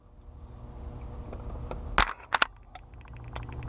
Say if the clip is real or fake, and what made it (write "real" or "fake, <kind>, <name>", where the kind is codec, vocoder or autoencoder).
real